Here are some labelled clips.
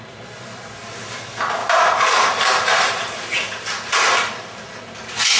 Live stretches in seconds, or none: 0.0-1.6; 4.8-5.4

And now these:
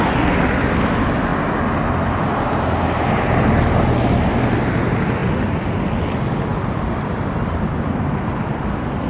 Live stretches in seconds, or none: 0.0-6.5

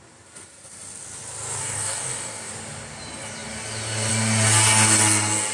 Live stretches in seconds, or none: 0.0-1.6; 2.5-5.5

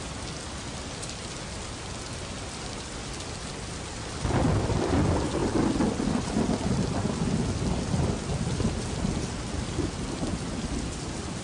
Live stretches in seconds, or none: 0.0-11.4

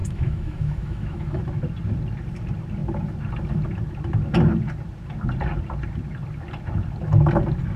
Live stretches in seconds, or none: 1.4-7.8

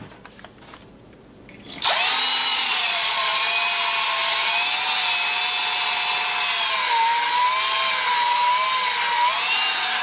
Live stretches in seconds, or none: 0.0-2.5; 3.3-10.0

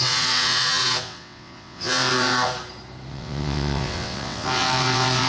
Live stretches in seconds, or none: 2.5-3.1

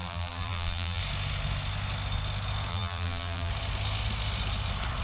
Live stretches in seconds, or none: 1.0-2.7; 3.5-5.0